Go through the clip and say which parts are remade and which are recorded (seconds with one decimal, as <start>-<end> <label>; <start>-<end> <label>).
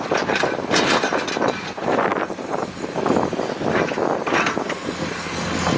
0.0-5.8 recorded